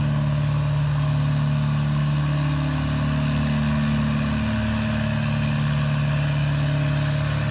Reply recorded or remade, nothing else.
recorded